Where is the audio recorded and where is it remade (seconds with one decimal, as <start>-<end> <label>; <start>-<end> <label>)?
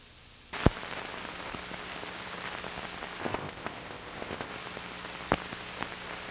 0.0-3.2 recorded; 3.2-4.5 remade; 4.5-6.3 recorded